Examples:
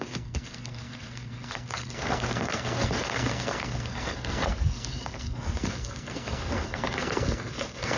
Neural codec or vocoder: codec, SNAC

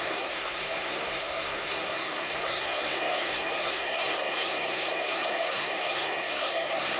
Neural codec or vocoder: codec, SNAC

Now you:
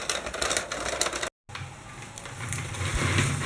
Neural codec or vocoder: none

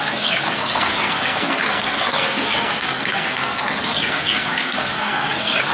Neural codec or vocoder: codec, SNAC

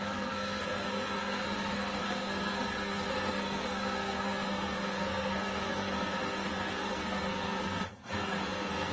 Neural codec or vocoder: codec, SNAC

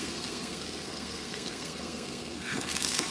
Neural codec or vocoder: codec, SNAC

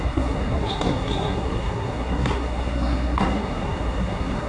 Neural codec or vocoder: codec, SNAC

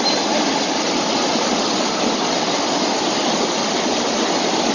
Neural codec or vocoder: none